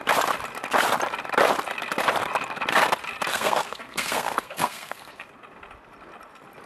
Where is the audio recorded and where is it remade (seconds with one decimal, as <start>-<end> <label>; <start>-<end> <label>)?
0.0-3.3 recorded; 3.3-5.3 remade; 5.3-6.7 recorded